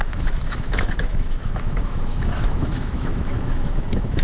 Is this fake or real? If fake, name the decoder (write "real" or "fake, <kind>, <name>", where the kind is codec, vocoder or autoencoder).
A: fake, autoencoder, DAC-VAE